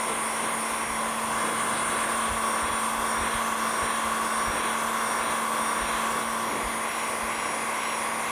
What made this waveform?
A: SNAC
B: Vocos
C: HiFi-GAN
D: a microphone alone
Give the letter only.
D